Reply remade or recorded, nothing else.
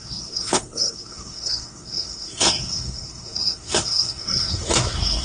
remade